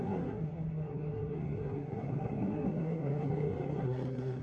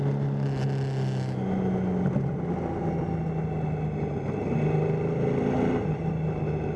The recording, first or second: second